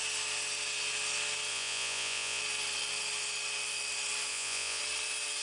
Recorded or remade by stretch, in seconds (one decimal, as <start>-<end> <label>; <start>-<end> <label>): 0.0-1.5 recorded; 1.5-2.4 remade; 2.4-4.3 recorded; 4.3-4.8 remade; 4.8-5.4 recorded